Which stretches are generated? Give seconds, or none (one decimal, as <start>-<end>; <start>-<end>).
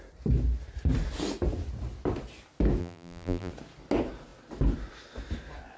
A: 2.8-3.5